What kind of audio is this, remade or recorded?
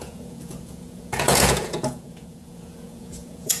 remade